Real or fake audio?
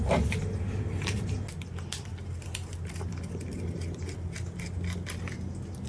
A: real